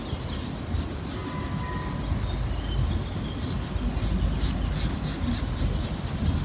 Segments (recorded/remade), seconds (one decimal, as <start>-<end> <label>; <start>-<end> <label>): 0.0-6.4 recorded